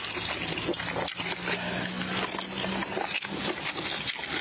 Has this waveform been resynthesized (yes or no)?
no